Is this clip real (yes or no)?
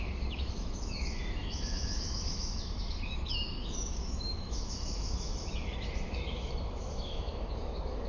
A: no